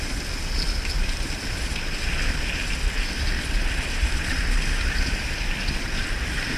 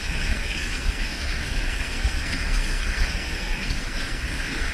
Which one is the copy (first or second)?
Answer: second